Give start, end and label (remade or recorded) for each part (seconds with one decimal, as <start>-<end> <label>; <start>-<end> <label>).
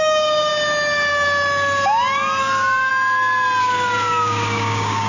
0.0-0.5 remade; 0.5-2.4 recorded; 2.4-2.9 remade; 2.9-3.6 recorded; 3.6-5.1 remade